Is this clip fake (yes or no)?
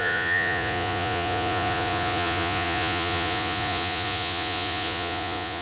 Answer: yes